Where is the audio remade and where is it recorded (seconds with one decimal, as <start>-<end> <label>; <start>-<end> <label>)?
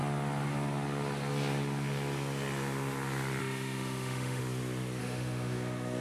0.0-3.4 recorded; 3.4-4.4 remade; 4.4-5.0 recorded; 5.0-6.0 remade